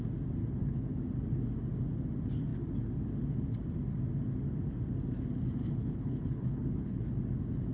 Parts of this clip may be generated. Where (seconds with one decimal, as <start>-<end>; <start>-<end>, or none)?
0.4-1.0; 5.6-7.2